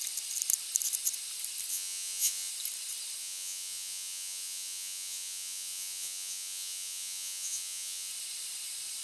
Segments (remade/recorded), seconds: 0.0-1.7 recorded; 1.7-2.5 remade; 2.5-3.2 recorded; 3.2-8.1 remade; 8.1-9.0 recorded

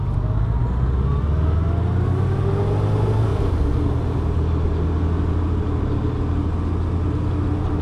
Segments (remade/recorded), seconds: 0.0-7.8 recorded

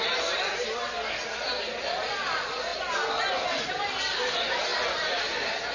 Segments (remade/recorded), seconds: 0.0-5.7 recorded

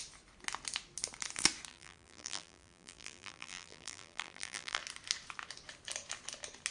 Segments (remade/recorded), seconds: 0.0-1.7 recorded; 1.7-4.8 remade; 4.8-6.7 recorded

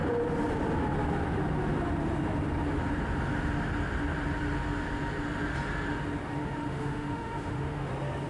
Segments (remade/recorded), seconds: 0.0-6.4 recorded; 6.4-7.9 remade; 7.9-8.3 recorded

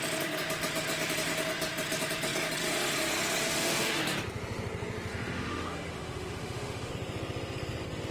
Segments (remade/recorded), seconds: 0.0-3.4 recorded; 3.4-4.0 remade; 4.0-5.1 recorded; 5.1-6.9 remade; 6.9-8.1 recorded